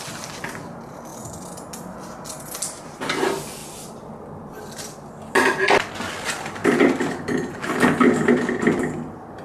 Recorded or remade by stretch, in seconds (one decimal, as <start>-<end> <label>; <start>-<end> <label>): 0.0-9.4 recorded